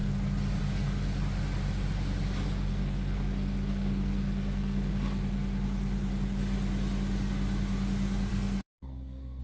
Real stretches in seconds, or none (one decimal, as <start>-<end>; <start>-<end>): 0.0-2.7; 4.9-8.3